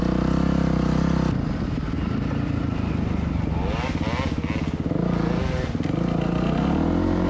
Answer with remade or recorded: recorded